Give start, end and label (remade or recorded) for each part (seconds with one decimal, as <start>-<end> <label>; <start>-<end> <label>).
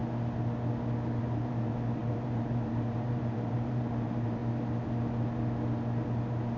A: 0.0-1.2 recorded; 1.2-4.4 remade; 4.4-6.6 recorded